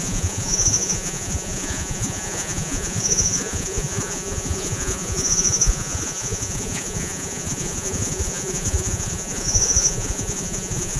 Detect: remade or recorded remade